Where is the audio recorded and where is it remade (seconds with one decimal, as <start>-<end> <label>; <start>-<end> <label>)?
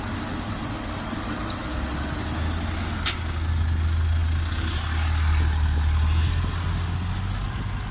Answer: 0.0-7.9 recorded